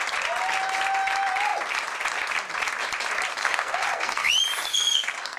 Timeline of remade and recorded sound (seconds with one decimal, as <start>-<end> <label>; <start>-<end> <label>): 0.0-3.4 recorded; 3.4-4.3 remade; 4.3-4.7 recorded; 4.7-5.4 remade